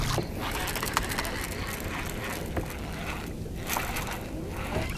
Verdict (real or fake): real